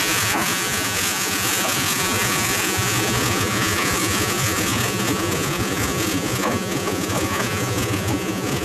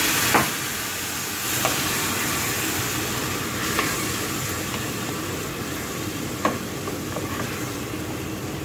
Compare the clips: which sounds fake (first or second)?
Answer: first